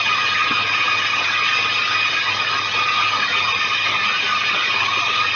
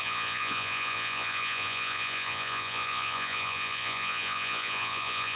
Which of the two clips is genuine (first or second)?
first